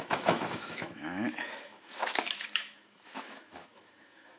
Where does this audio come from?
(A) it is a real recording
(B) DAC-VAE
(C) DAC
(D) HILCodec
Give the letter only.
B